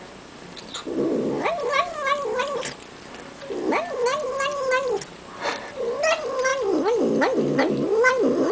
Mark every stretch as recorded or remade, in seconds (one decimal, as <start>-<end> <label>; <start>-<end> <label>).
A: 0.0-8.5 recorded